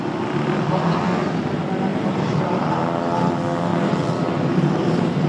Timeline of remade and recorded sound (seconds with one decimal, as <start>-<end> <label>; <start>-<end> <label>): 0.0-1.9 recorded; 1.9-2.8 remade; 2.8-3.7 recorded; 3.7-5.3 remade